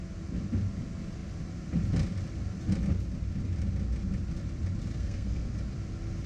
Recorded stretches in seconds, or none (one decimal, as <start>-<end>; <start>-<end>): 0.0-4.9; 5.6-6.3